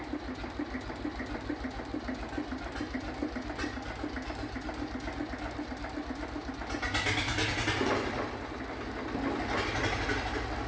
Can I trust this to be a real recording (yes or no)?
yes